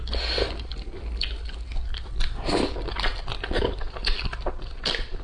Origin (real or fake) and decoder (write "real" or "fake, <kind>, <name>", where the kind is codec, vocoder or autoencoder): real